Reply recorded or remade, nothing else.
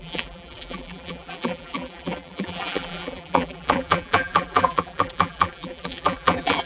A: remade